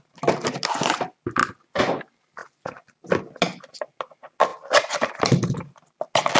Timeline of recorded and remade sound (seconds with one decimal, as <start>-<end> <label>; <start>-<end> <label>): 0.0-4.5 recorded; 4.5-5.2 remade; 5.2-6.4 recorded